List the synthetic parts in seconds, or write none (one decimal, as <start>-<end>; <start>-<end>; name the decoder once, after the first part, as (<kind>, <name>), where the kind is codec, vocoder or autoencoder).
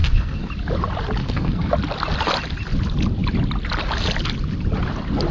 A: 0.0-0.5 (codec, SNAC); 1.2-1.7